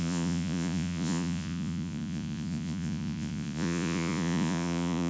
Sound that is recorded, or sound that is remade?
remade